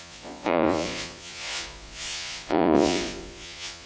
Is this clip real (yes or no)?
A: no